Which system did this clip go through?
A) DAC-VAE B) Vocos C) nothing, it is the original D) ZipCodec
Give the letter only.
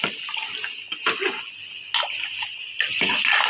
C